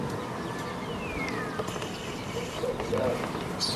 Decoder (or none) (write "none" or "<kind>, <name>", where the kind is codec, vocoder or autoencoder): none